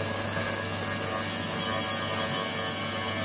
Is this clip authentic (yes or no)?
yes